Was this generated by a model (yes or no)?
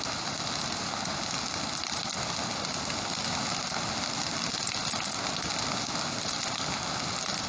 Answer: no